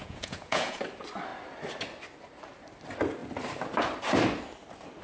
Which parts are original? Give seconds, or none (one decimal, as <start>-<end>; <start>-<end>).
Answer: 0.8-5.0